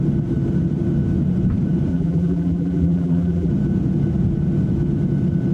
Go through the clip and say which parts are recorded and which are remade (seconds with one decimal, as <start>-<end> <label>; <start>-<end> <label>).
0.0-1.9 recorded; 1.9-3.5 remade; 3.5-5.5 recorded

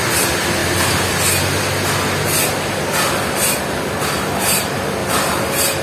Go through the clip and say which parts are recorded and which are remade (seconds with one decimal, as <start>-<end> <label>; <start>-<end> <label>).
0.0-5.0 recorded; 5.0-5.8 remade

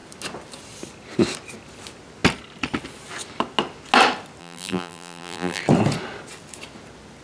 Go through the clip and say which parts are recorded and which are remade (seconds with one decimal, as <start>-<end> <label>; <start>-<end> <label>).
0.0-4.4 recorded; 4.4-5.6 remade; 5.6-7.2 recorded

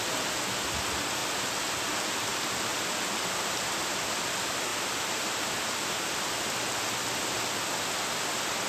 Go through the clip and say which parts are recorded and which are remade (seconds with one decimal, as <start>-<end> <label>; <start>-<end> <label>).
0.0-2.3 recorded; 2.3-4.3 remade; 4.3-8.7 recorded

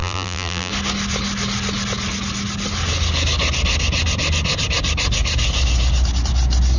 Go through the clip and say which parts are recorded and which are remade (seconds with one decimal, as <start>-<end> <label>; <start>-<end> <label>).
0.0-0.7 remade; 0.7-6.8 recorded

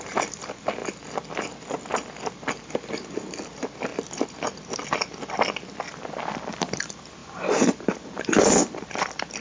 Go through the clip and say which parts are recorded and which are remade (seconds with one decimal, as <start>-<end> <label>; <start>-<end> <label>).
0.0-0.8 remade; 0.8-2.5 recorded; 2.5-3.9 remade; 3.9-5.8 recorded; 5.8-9.4 remade